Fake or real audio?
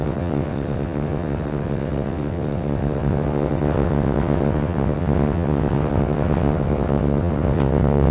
fake